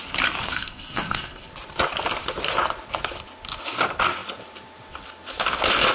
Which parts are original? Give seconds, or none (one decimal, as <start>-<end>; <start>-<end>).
0.0-0.4; 1.5-5.9